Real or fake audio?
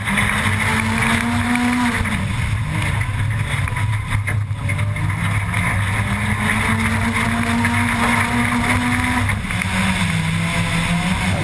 real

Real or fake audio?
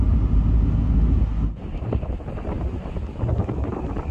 real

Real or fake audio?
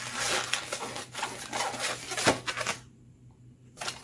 real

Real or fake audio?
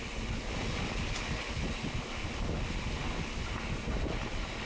real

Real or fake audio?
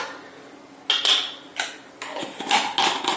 real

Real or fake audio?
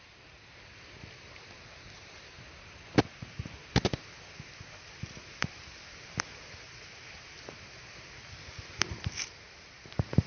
real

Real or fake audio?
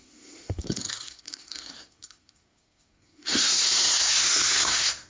fake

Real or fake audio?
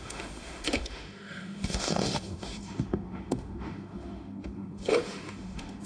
fake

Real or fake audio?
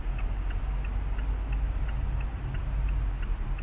real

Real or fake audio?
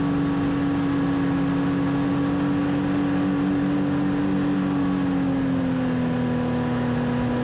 real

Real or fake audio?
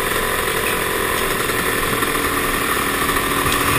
real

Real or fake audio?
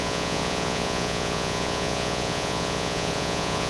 fake